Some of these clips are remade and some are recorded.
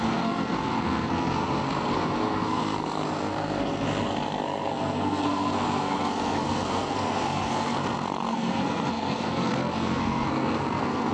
remade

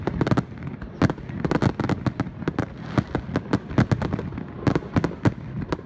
recorded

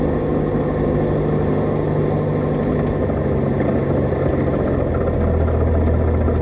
recorded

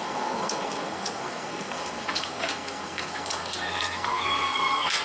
remade